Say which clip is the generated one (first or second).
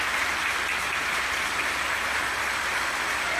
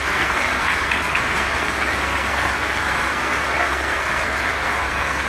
second